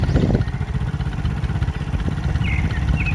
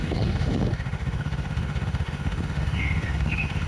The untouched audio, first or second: first